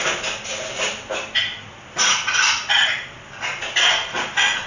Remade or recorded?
recorded